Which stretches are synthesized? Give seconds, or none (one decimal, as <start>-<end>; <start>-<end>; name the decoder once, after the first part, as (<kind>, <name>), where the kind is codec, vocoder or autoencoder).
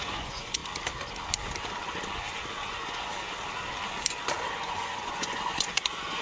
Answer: 0.0-0.6 (vocoder, Vocos); 2.6-3.1; 4.5-6.2